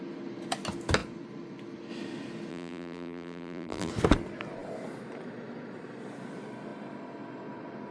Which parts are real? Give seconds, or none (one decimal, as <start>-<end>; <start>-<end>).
0.0-2.5; 3.9-7.9